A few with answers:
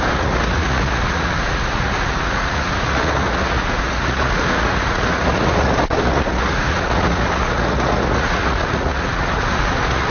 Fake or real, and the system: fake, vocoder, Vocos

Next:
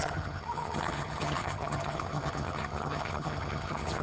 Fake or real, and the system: fake, vocoder, HiFi-GAN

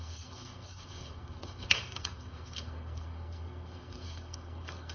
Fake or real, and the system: fake, codec, SNAC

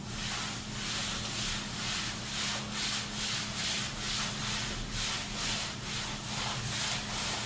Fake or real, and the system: real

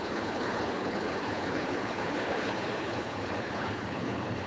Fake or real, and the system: fake, codec, HILCodec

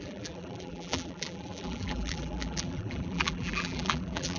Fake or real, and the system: fake, vocoder, BigVGAN v2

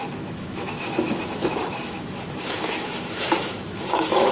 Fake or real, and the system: fake, autoencoder, DAC-VAE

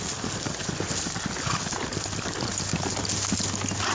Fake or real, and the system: real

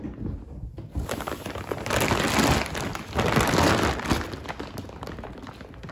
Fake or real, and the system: real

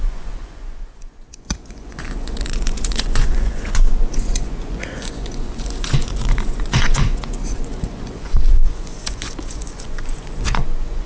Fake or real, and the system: fake, vocoder, Vocos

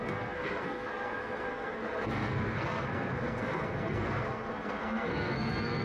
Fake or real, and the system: fake, codec, SNAC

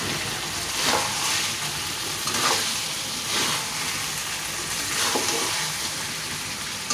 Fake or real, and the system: real